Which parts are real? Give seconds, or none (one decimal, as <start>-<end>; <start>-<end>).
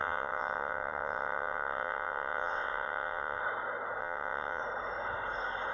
3.4-4.0; 4.6-5.7